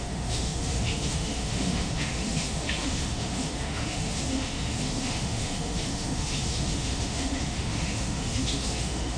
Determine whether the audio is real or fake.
fake